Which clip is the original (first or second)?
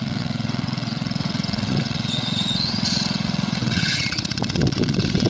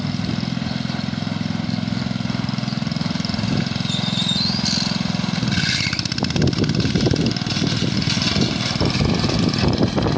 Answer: second